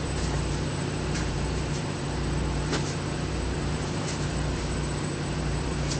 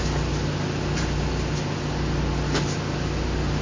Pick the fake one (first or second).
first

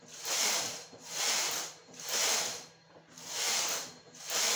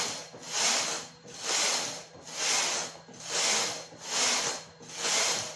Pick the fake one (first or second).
first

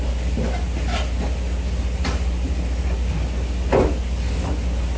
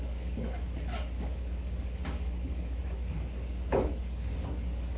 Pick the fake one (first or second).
second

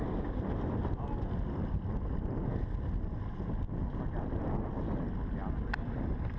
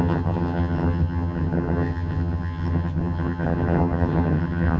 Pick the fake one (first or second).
second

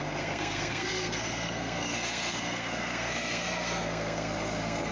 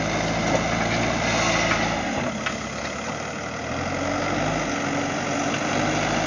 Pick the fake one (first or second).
first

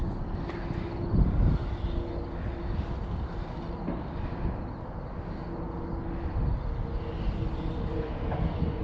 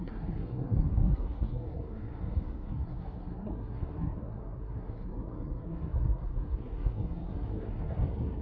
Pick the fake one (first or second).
second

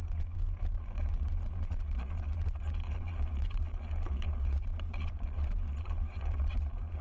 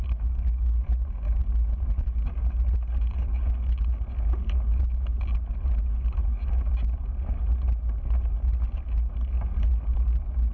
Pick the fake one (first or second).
first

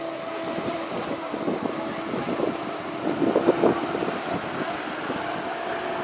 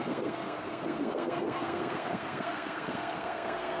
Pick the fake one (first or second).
second